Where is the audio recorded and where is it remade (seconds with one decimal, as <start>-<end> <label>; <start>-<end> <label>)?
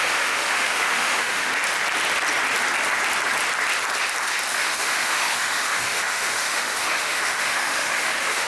0.0-1.5 remade; 1.5-4.5 recorded; 4.5-8.5 remade